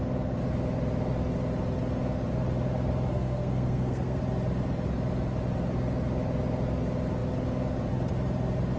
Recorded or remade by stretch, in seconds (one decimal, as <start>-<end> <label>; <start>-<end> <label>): 0.0-3.1 recorded; 3.1-4.2 remade; 4.2-8.8 recorded

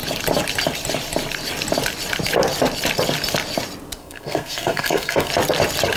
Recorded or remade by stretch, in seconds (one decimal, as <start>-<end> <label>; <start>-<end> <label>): 0.0-4.0 recorded; 4.0-5.3 remade; 5.3-6.0 recorded

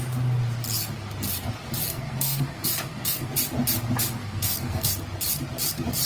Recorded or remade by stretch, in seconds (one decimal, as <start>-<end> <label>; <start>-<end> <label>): 0.0-1.9 recorded; 1.9-3.3 remade; 3.3-4.2 recorded; 4.2-4.9 remade; 4.9-6.1 recorded

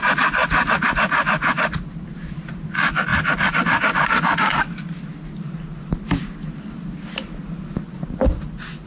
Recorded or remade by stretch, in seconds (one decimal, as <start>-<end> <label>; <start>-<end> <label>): 0.0-8.9 recorded

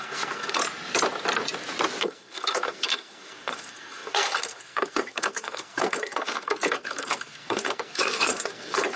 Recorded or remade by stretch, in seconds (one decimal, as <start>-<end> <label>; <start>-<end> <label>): 0.0-0.6 remade; 0.6-2.0 recorded; 2.0-9.0 remade

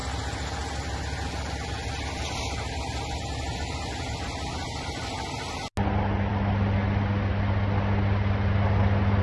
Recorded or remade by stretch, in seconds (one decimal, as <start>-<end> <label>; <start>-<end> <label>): 0.0-9.2 recorded

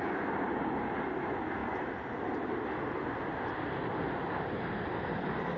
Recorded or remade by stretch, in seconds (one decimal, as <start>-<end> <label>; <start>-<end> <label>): 0.0-5.6 recorded

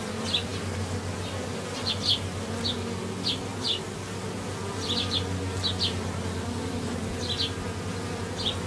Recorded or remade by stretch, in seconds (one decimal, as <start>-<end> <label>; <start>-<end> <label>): 0.0-8.7 recorded